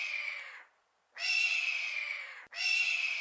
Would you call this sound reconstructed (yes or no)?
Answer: no